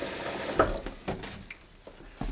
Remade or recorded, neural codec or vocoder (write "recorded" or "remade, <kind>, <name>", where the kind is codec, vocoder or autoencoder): recorded